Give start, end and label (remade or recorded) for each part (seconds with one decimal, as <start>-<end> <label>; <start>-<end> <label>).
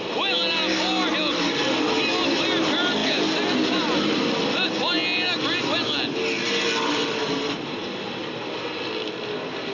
0.0-9.7 recorded